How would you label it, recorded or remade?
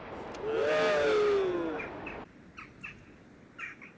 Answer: recorded